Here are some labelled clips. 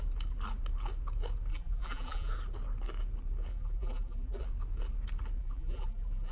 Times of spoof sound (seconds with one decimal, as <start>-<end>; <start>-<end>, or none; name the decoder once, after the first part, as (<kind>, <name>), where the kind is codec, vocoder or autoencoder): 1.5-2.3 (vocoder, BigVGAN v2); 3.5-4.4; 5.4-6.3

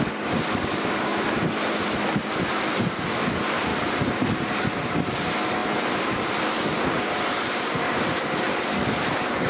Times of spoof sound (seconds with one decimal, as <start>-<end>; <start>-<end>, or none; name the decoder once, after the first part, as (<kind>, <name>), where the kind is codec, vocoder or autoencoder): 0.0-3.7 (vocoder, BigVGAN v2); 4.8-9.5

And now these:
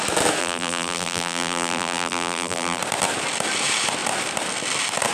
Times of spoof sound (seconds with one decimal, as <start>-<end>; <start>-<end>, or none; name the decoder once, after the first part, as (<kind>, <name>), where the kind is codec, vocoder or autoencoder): 0.4-2.8 (vocoder, BigVGAN v2)